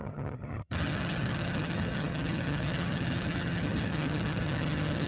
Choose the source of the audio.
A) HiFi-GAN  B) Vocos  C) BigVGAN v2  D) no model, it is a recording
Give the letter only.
A